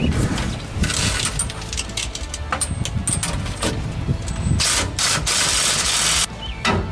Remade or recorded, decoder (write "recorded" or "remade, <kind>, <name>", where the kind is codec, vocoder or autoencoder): recorded